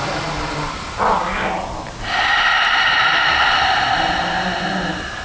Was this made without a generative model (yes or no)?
yes